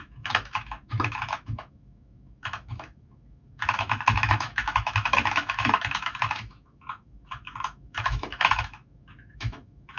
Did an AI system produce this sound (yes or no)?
yes